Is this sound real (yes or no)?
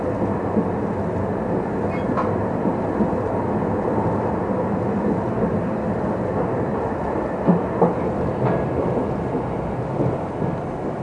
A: yes